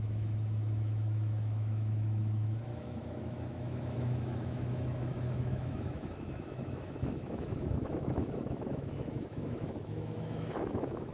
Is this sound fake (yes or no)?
yes